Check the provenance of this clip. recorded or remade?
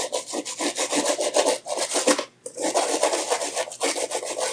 recorded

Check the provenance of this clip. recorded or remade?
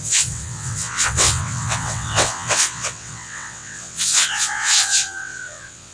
remade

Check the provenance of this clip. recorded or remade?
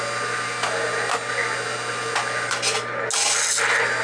recorded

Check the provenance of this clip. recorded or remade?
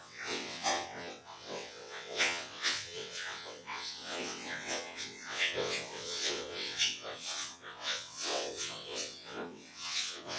remade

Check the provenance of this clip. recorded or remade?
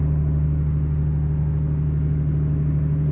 recorded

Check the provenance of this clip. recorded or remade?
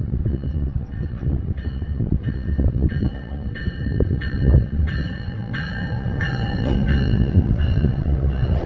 remade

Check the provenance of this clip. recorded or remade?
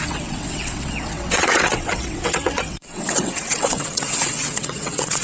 remade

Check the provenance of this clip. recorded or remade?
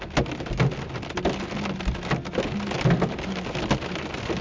recorded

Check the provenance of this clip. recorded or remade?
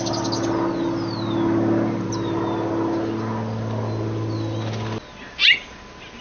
recorded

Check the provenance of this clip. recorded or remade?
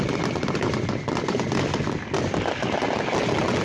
recorded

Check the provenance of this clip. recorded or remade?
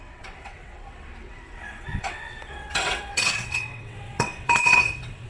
remade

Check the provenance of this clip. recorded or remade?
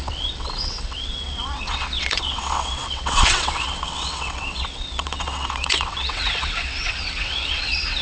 remade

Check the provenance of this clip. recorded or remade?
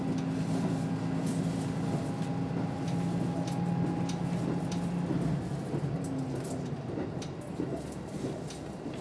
recorded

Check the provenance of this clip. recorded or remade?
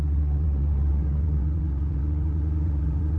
remade